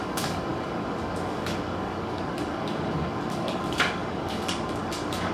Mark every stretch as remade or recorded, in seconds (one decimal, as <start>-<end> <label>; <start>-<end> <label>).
0.0-5.3 remade